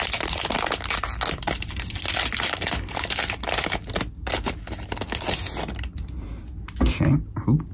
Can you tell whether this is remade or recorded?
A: recorded